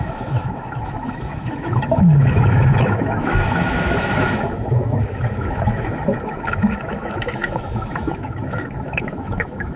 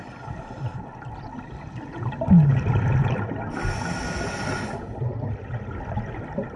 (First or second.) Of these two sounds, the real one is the second